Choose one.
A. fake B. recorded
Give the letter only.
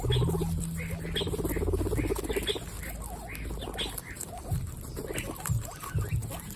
B